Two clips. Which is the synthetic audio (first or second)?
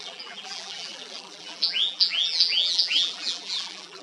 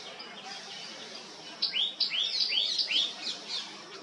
first